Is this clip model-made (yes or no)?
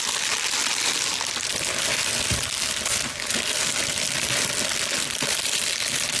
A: no